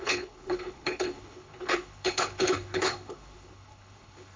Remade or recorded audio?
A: remade